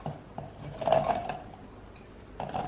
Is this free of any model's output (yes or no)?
yes